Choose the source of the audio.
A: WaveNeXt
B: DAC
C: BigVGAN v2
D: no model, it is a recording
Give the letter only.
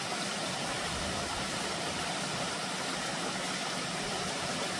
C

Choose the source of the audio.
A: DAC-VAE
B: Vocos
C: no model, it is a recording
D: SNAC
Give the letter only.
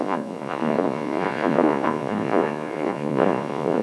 B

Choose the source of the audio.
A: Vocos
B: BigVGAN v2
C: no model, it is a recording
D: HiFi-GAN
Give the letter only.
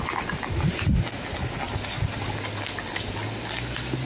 C